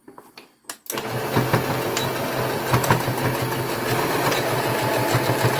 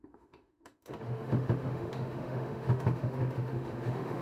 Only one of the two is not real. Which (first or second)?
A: second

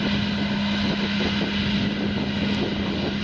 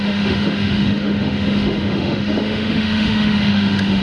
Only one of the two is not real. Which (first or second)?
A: second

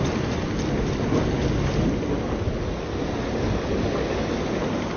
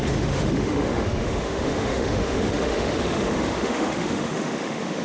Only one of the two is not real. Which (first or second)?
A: second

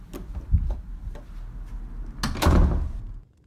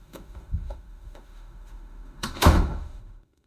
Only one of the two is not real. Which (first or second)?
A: second